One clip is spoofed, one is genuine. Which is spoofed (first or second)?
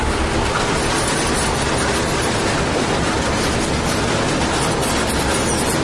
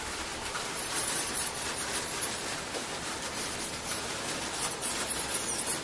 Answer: second